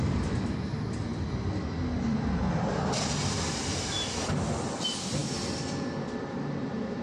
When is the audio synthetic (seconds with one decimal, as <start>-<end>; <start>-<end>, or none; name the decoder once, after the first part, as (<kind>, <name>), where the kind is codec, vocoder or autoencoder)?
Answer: 0.0-7.0 (vocoder, BigVGAN v2)